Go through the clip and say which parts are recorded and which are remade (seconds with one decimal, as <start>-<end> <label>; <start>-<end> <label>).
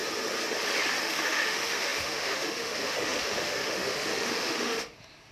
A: 0.0-1.0 recorded; 1.0-5.3 remade